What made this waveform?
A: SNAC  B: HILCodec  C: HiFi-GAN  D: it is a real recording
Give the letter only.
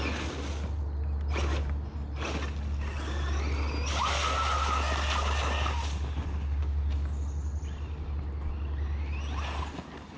D